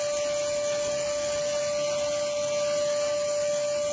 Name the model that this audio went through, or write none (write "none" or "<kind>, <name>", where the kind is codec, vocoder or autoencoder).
none